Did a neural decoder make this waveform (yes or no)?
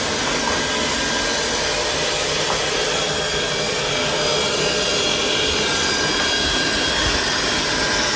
no